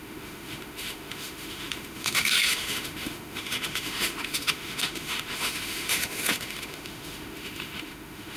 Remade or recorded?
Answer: remade